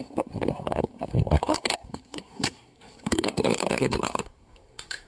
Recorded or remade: remade